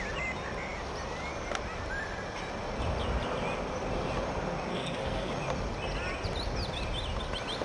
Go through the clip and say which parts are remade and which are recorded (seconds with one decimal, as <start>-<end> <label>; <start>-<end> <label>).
0.0-4.7 recorded; 4.7-5.3 remade; 5.3-7.6 recorded